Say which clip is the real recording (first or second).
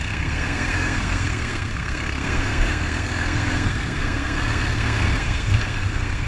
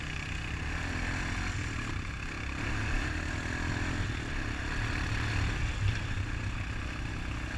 second